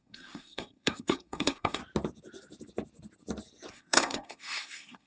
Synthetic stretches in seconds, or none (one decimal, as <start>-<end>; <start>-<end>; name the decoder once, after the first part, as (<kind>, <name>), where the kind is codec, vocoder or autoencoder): 0.0-1.8 (codec, SNAC); 3.7-5.1